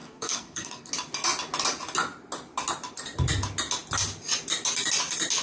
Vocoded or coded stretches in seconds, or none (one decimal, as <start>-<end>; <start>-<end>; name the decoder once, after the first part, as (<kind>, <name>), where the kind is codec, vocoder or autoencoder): 0.0-0.9 (codec, SNAC)